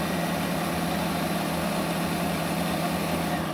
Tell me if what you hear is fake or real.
real